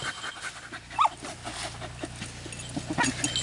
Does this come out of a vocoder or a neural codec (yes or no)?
no